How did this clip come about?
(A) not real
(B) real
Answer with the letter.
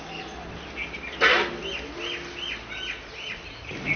B